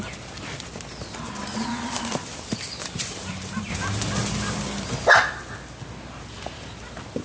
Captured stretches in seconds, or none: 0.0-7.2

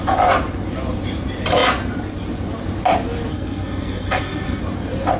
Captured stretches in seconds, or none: 0.0-3.3; 4.6-5.2

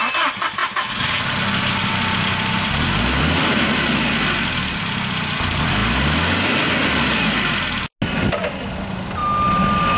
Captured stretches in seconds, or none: 0.0-10.0

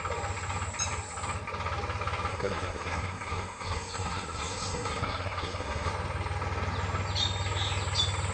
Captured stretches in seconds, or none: 0.0-2.3; 5.9-8.3

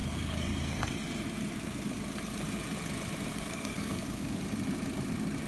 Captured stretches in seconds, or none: 1.0-3.3; 4.4-5.5